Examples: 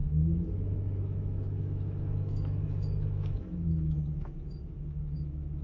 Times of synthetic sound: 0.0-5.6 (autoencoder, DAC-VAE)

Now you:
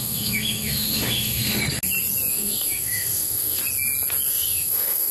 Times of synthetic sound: 0.0-1.6 (autoencoder, DAC-VAE); 2.3-3.6; 4.3-5.1

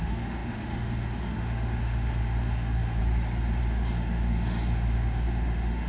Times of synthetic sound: 0.0-3.0 (autoencoder, DAC-VAE); 3.6-5.9